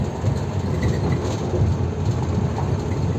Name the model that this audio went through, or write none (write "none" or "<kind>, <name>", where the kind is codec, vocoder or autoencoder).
none